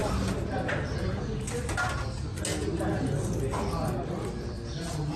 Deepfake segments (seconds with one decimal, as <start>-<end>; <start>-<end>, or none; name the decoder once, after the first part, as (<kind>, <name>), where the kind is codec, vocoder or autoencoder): 0.7-1.1 (vocoder, BigVGAN v2); 4.2-5.2